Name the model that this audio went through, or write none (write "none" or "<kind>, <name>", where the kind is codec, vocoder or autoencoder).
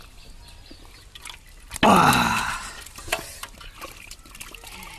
none